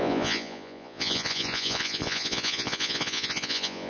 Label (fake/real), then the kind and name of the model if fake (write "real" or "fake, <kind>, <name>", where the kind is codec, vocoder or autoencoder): fake, vocoder, Vocos